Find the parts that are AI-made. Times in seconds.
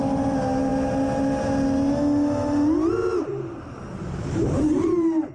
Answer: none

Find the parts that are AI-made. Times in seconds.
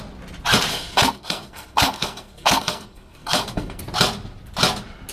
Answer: 0.7-3.8